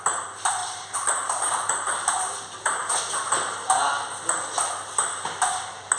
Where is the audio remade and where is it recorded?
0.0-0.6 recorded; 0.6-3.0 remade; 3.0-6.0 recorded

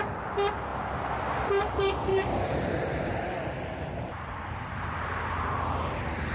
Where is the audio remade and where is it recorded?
0.0-2.1 recorded; 2.1-5.0 remade; 5.0-6.3 recorded

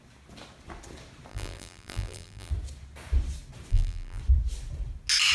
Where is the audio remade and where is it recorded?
0.0-1.3 recorded; 1.3-2.5 remade; 2.5-3.7 recorded; 3.7-4.2 remade; 4.2-5.3 recorded

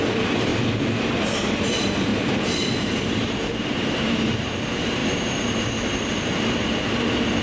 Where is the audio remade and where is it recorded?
0.0-0.5 remade; 0.5-1.5 recorded; 1.5-7.4 remade

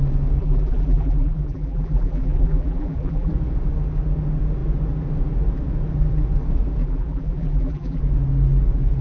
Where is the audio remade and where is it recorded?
0.0-0.4 recorded; 0.4-3.3 remade; 3.3-6.8 recorded; 6.8-8.0 remade; 8.0-9.0 recorded

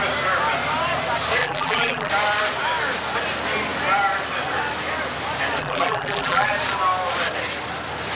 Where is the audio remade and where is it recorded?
0.0-1.4 recorded; 1.4-2.1 remade; 2.1-5.6 recorded; 5.6-6.5 remade; 6.5-8.1 recorded

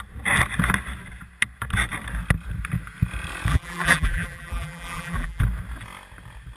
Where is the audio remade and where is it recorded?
0.0-3.5 recorded; 3.5-5.4 remade; 5.4-6.6 recorded

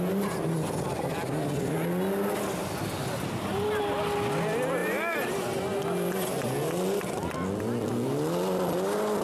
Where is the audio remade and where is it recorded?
0.0-9.2 recorded